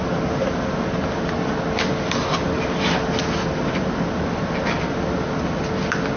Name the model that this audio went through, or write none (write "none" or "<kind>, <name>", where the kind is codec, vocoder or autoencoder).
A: none